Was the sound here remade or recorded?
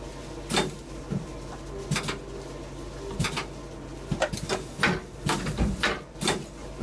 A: recorded